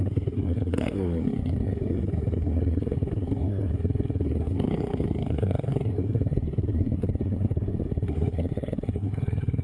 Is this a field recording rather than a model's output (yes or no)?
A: no